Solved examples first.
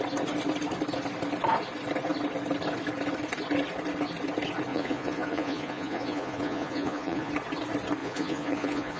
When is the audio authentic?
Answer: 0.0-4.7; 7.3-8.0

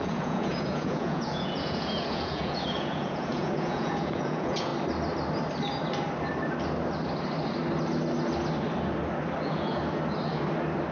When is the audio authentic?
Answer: 4.7-9.4; 9.8-10.9

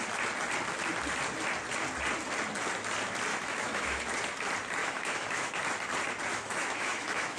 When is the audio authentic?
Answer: 0.0-3.3; 4.0-4.8; 5.5-6.3

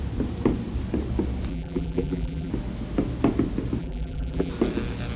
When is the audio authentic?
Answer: 0.0-1.5; 2.5-3.8; 4.5-5.2

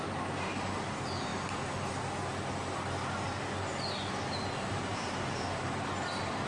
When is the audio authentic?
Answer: 1.3-4.7

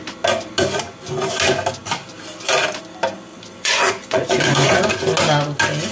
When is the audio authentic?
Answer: 0.0-3.3; 4.9-5.9

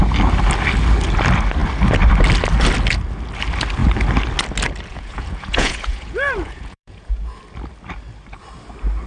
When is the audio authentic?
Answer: 0.0-4.9; 7.4-9.1